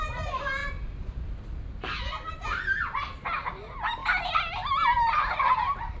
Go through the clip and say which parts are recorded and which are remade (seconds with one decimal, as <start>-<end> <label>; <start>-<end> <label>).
0.0-6.0 recorded